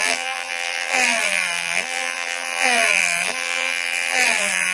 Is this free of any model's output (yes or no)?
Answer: no